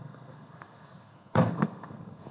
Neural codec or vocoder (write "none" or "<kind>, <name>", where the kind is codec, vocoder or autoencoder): codec, SNAC